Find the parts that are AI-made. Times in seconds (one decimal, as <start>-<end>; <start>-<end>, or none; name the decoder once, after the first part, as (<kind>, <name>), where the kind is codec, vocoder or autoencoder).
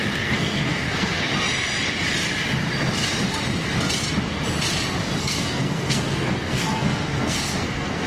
0.0-1.3 (codec, SNAC); 5.2-8.1